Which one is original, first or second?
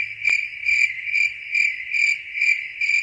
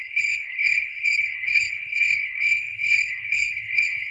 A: first